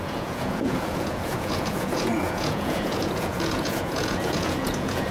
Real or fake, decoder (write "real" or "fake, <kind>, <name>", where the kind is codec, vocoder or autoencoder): fake, vocoder, Vocos